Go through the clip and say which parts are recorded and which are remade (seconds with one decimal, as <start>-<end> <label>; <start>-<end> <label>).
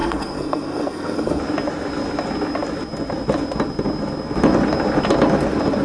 0.0-1.4 remade; 1.4-5.8 recorded